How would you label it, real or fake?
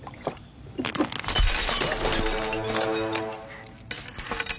real